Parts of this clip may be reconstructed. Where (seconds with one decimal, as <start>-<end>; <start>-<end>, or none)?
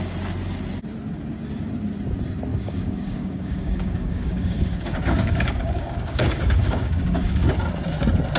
2.5-7.5